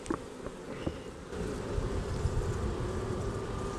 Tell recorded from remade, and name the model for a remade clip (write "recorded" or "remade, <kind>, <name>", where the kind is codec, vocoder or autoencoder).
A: recorded